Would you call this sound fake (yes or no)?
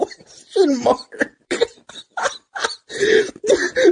yes